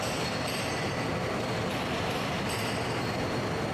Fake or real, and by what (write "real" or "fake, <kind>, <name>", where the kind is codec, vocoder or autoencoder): real